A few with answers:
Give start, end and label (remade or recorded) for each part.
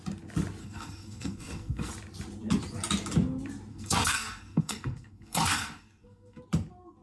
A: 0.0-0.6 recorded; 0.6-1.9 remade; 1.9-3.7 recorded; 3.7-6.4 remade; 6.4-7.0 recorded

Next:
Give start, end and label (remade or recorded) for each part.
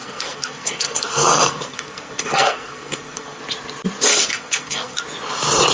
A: 0.0-3.4 remade; 3.4-4.1 recorded; 4.1-5.0 remade; 5.0-5.7 recorded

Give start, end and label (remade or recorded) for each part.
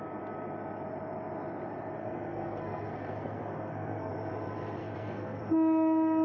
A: 0.0-2.0 recorded; 2.0-4.1 remade; 4.1-4.8 recorded; 4.8-5.4 remade; 5.4-6.2 recorded